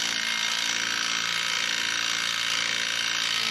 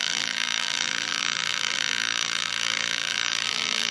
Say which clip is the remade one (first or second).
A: second